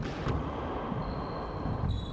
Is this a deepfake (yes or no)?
no